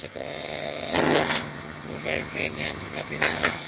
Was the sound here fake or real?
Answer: fake